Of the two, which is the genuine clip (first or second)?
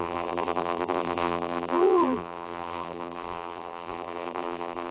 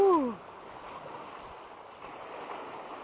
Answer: second